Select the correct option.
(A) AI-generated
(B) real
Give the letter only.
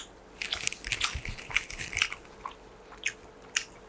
B